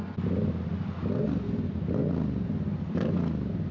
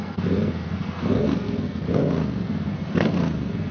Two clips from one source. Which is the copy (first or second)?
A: second